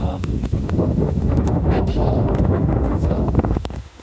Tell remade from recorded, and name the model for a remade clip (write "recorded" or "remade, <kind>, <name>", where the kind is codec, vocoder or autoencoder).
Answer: remade, autoencoder, DAC-VAE